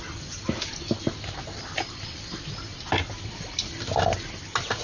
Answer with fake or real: real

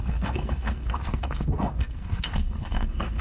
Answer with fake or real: fake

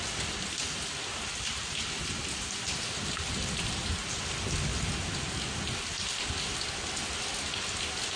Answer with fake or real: real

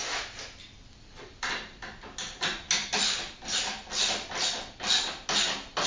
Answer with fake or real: real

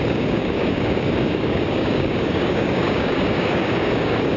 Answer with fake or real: fake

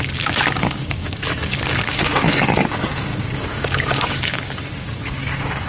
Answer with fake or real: fake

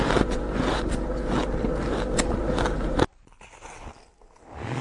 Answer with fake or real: real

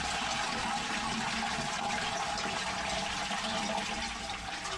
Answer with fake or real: real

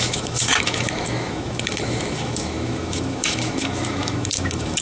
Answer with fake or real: fake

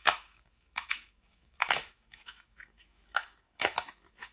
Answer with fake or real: fake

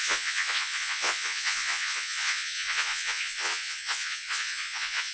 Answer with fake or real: fake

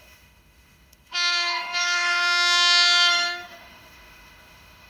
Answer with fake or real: fake